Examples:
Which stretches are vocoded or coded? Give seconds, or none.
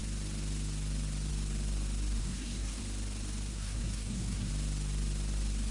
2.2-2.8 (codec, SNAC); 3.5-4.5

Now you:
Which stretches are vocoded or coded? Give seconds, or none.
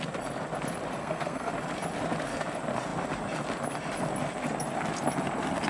1.0-1.5 (codec, SNAC)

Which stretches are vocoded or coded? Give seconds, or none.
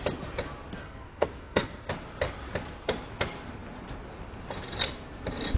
0.8-1.9 (codec, SNAC)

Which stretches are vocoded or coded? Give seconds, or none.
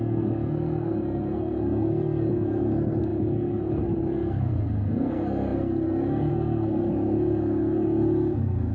0.0-8.7 (codec, SNAC)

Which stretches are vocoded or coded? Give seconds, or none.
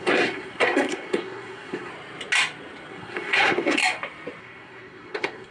0.0-1.9 (codec, SNAC); 2.9-3.8; 4.4-5.5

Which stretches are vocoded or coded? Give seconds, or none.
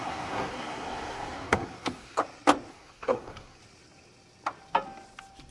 0.0-2.2 (codec, SNAC); 2.7-3.6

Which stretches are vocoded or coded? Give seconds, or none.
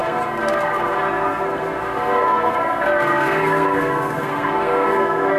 0.0-5.4 (codec, SNAC)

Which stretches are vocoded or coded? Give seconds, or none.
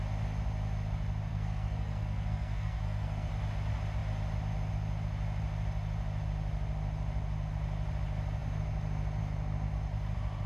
1.3-3.3 (codec, SNAC)